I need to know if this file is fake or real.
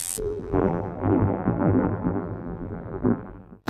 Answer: fake